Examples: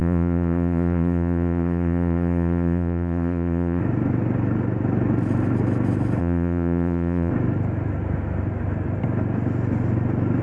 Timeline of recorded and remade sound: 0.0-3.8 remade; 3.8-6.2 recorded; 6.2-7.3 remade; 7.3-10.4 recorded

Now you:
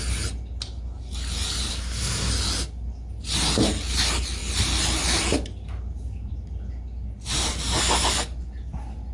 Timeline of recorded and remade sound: 0.0-1.7 recorded; 1.7-2.3 remade; 2.3-9.1 recorded

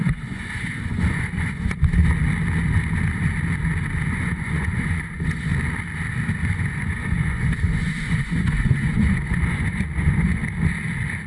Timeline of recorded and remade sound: 0.0-2.0 remade; 2.0-4.1 recorded; 4.1-5.5 remade; 5.5-6.6 recorded; 6.6-10.4 remade; 10.4-11.3 recorded